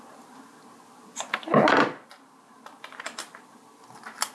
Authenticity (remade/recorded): recorded